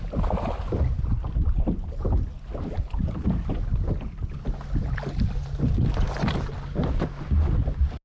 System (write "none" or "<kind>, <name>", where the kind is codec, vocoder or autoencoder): none